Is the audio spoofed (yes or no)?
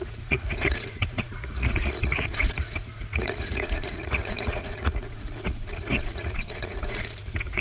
yes